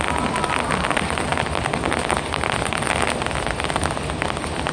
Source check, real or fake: real